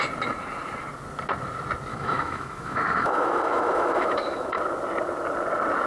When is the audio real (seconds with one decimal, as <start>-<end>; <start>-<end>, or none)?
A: 0.0-1.9; 4.6-5.9